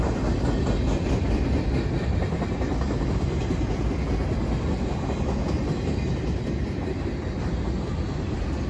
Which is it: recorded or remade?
recorded